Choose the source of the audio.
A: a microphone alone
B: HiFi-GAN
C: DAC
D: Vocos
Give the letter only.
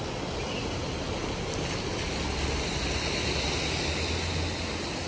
A